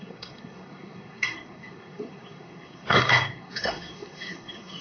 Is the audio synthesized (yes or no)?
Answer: yes